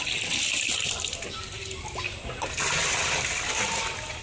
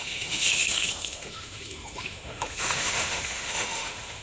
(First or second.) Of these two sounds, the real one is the first